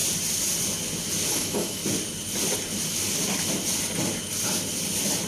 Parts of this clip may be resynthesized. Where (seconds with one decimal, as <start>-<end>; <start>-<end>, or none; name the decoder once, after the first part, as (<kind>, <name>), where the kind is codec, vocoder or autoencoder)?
1.3-1.8 (autoencoder, DAC-VAE)